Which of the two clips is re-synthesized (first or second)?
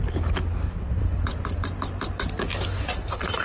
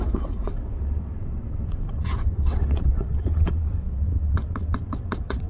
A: second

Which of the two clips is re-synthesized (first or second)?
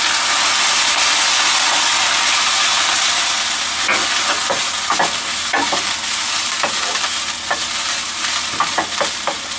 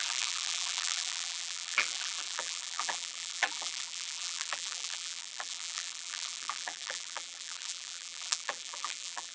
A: second